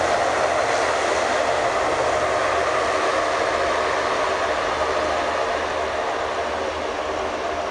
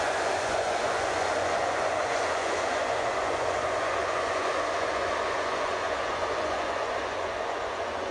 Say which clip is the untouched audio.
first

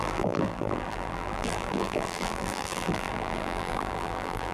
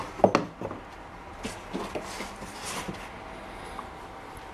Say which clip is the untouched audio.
second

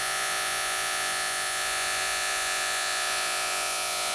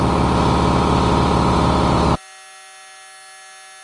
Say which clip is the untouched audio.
second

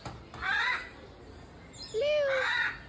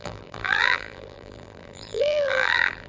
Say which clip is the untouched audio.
first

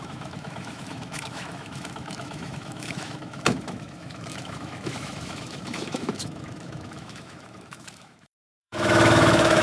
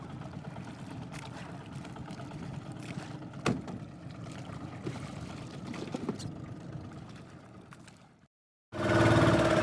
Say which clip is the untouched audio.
second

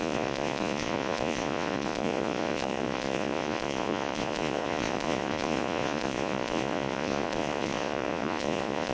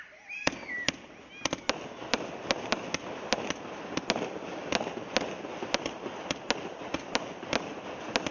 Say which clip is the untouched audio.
second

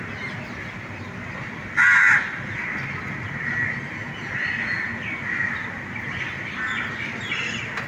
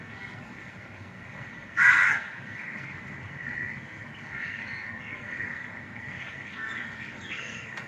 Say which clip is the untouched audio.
first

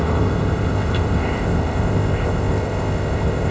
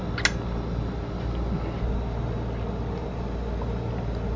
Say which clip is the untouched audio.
second